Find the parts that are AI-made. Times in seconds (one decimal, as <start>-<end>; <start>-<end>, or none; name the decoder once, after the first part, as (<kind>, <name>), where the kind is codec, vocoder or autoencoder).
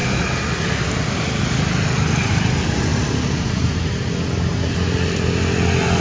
2.9-4.1 (vocoder, BigVGAN v2)